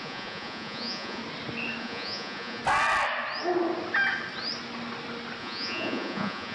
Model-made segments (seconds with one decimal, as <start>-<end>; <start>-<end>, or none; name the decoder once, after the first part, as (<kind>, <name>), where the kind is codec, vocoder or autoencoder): 0.0-1.2 (vocoder, Vocos); 1.8-2.6; 5.4-6.5